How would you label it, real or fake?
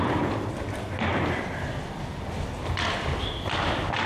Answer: real